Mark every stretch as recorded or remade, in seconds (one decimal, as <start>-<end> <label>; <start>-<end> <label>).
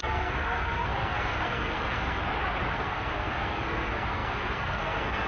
0.0-2.2 remade; 2.2-2.7 recorded; 2.7-5.3 remade